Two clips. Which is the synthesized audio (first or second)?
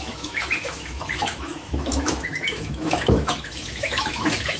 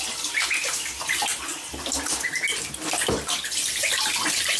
first